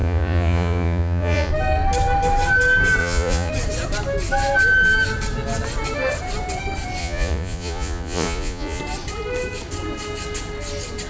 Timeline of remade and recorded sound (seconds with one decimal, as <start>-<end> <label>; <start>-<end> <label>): 0.0-1.5 remade; 1.5-3.0 recorded; 3.0-3.5 remade; 3.5-7.0 recorded; 7.0-8.8 remade; 8.8-11.1 recorded